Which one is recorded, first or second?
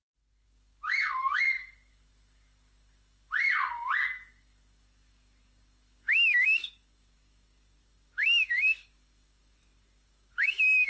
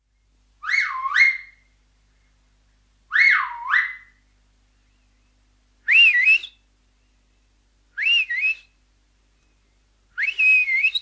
second